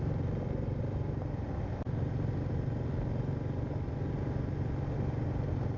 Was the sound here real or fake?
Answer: real